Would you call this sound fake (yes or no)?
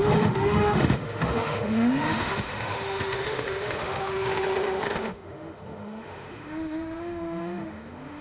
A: yes